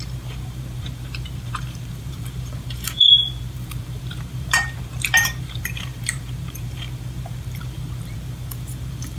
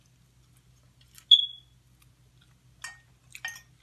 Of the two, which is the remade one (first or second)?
first